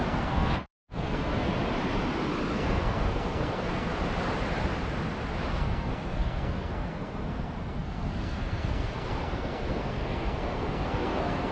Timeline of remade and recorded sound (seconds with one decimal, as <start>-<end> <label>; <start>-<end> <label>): 0.0-1.5 remade; 1.5-2.5 recorded; 2.5-3.9 remade; 3.9-5.5 recorded; 5.5-11.5 remade